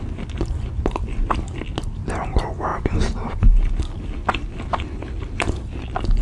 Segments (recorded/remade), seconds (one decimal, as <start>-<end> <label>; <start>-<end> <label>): 0.0-2.7 recorded; 2.7-3.8 remade; 3.8-6.2 recorded